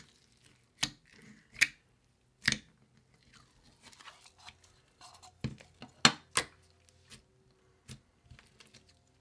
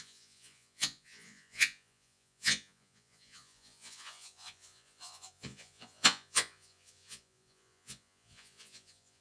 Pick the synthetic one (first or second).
second